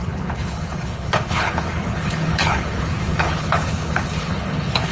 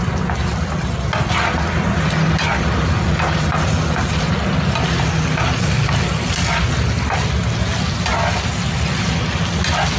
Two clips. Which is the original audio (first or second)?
second